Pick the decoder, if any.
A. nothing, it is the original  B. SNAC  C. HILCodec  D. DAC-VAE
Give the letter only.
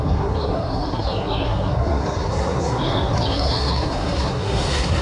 B